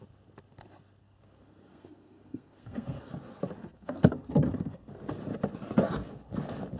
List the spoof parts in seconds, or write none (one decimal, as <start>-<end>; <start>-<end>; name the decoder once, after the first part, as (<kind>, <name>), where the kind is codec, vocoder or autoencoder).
1.0-3.1 (codec, SNAC); 3.6-5.0

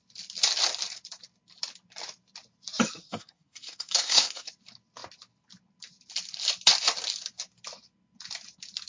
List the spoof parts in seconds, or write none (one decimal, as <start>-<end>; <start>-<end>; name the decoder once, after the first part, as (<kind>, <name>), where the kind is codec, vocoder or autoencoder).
3.0-4.5 (codec, SNAC)

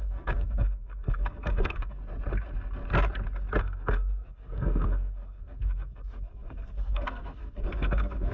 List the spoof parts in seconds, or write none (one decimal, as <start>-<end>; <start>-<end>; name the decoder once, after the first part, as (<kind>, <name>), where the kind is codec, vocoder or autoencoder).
0.0-2.0 (codec, SNAC); 3.6-8.3

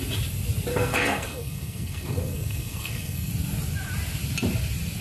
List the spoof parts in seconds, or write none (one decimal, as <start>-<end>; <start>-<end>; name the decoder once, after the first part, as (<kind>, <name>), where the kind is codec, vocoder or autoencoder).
0.7-3.3 (codec, SNAC)